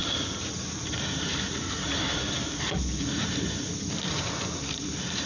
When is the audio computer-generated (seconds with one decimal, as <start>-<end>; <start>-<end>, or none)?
none